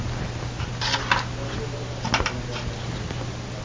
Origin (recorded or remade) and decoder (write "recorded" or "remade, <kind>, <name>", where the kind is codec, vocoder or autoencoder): recorded